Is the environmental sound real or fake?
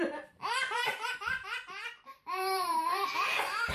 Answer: fake